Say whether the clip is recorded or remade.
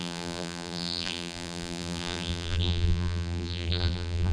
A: remade